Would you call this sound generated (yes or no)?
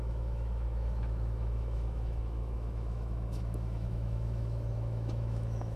yes